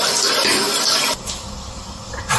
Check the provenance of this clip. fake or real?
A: real